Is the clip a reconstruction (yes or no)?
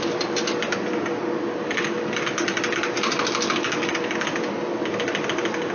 no